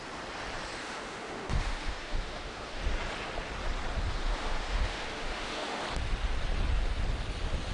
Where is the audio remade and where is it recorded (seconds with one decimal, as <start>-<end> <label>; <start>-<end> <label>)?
0.0-0.8 recorded; 0.8-2.8 remade; 2.8-4.2 recorded; 4.2-5.8 remade; 5.8-7.7 recorded